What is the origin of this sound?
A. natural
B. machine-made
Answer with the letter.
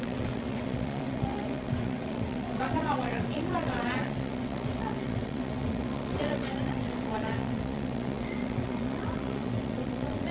B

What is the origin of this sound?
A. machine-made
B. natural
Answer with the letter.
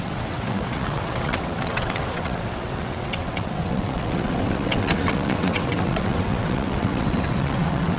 A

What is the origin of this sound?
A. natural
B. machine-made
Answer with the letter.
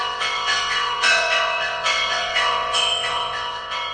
B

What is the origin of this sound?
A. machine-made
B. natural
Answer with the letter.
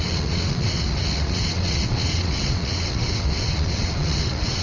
A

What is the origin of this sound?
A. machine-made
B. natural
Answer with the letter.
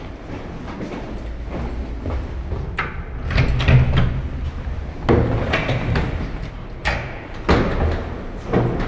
B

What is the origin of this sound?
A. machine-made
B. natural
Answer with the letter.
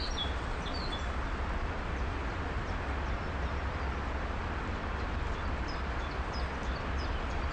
B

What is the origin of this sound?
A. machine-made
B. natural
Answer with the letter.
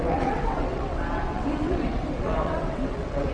A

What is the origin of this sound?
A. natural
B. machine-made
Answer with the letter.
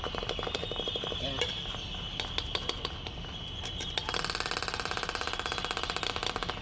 A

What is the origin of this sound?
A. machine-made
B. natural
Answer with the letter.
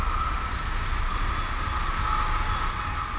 B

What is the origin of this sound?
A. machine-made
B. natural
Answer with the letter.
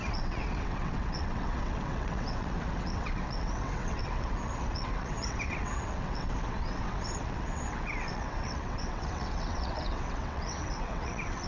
A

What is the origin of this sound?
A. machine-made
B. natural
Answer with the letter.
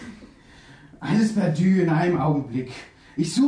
B